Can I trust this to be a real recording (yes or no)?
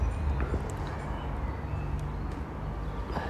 yes